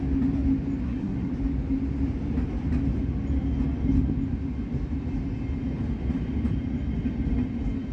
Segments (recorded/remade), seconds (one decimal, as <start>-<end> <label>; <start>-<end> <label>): 0.0-0.8 recorded; 0.8-1.3 remade; 1.3-7.9 recorded